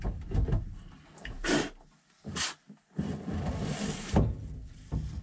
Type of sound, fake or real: real